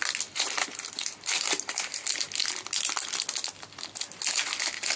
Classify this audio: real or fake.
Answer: real